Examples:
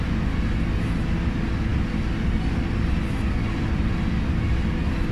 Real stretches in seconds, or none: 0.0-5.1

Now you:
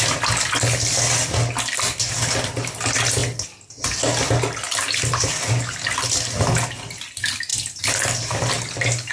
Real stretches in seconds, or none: 0.0-9.1

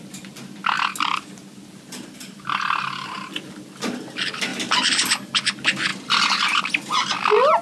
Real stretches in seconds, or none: 0.0-7.6

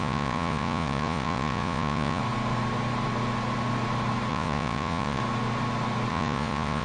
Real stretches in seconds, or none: 2.2-4.3; 5.2-6.1